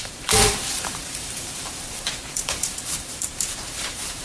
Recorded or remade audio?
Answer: remade